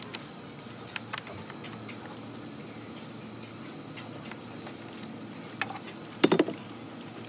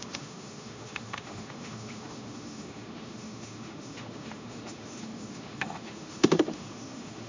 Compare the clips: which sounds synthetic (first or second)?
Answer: second